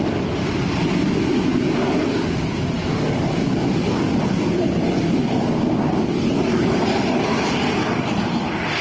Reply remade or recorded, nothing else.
recorded